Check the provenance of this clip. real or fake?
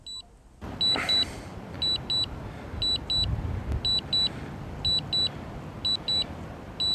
real